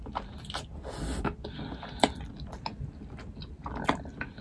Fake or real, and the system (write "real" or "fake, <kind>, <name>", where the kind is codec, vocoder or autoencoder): real